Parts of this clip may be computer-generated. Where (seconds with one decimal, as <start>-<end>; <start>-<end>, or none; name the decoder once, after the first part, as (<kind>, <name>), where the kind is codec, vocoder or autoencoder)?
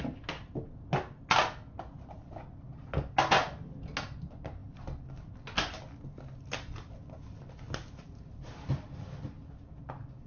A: none